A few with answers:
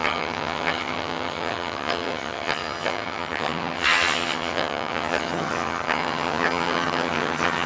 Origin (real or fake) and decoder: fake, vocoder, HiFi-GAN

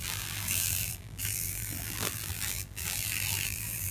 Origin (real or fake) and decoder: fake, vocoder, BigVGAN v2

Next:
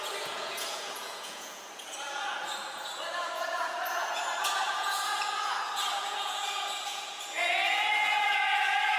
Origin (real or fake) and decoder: fake, vocoder, Vocos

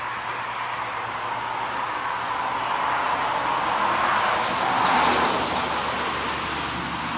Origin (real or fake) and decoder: real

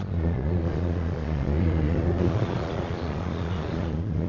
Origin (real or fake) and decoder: fake, vocoder, Vocos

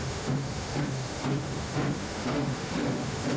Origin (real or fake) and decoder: fake, autoencoder, DAC-VAE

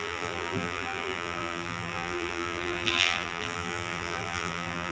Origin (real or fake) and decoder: fake, vocoder, BigVGAN v2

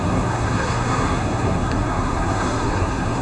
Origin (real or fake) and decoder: fake, codec, SNAC